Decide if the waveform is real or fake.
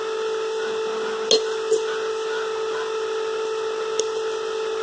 real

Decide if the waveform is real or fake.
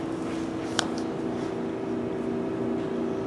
real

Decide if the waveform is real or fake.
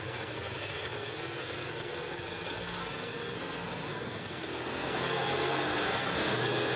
fake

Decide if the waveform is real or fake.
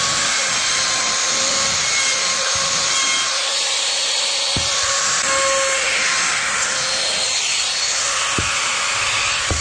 real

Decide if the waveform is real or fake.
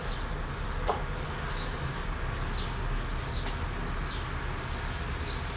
real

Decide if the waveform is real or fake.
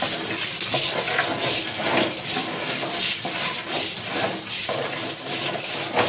real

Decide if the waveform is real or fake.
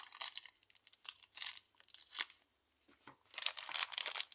real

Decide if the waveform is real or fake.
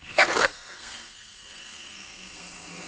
fake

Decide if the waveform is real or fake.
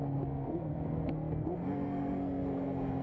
fake